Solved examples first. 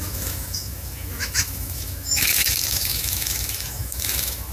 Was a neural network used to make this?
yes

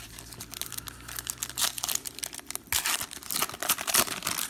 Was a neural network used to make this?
no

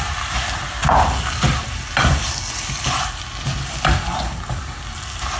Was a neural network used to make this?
no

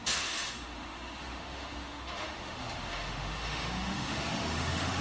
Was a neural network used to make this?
yes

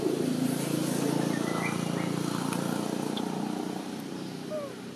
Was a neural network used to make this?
no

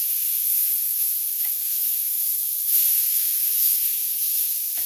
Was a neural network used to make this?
yes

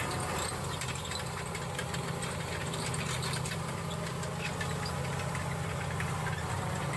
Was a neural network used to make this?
no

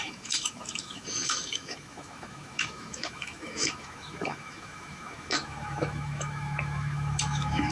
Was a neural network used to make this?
yes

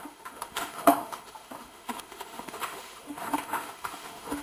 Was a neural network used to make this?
yes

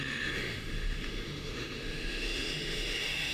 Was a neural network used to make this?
yes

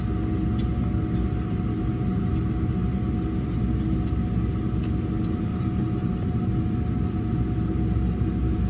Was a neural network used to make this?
no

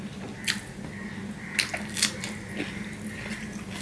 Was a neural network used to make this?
no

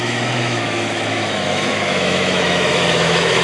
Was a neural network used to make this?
yes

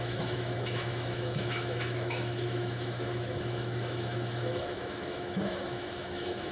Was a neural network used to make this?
yes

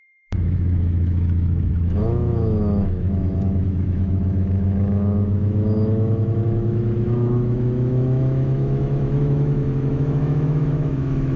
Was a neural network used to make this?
yes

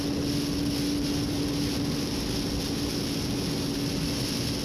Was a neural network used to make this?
no